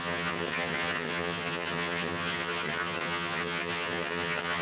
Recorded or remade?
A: remade